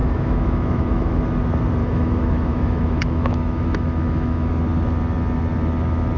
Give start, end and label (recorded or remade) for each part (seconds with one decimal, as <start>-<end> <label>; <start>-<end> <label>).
0.0-1.2 remade; 1.2-1.8 recorded; 1.8-4.5 remade; 4.5-6.2 recorded